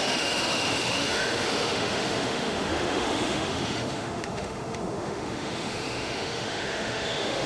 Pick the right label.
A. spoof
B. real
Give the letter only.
A